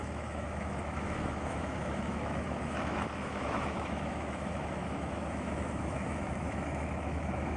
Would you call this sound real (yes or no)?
no